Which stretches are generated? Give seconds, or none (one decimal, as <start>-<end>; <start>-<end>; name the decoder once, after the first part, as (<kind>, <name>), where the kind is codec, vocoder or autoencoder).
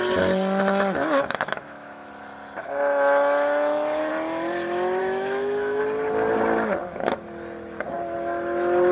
1.0-2.1 (autoencoder, DAC-VAE); 2.6-4.1; 5.0-5.8